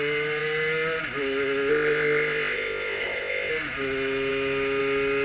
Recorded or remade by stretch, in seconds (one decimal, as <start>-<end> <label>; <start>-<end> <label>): 0.0-1.7 recorded; 1.7-3.5 remade; 3.5-5.2 recorded